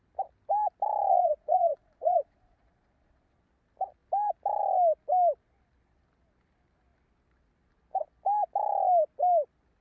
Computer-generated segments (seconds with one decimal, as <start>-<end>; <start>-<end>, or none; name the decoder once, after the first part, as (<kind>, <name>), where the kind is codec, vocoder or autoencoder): 1.1-3.4 (vocoder, Vocos)